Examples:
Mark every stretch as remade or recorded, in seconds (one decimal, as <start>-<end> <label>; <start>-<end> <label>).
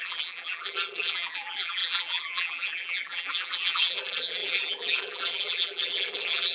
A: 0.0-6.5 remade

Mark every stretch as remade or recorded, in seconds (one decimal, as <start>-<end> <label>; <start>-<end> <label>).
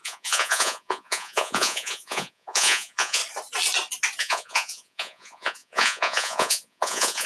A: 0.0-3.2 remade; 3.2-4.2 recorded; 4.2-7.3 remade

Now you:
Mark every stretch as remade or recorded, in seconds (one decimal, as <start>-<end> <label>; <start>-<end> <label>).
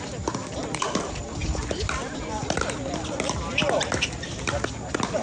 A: 0.0-5.2 recorded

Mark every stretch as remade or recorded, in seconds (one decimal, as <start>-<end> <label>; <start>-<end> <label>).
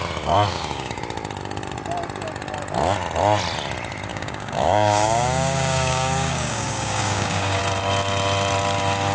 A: 0.0-0.5 recorded; 0.5-1.0 remade; 1.0-4.1 recorded; 4.1-7.6 remade; 7.6-9.1 recorded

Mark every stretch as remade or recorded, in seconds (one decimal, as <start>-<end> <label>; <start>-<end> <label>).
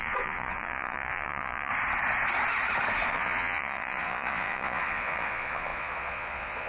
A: 0.0-1.7 remade; 1.7-3.1 recorded; 3.1-6.7 remade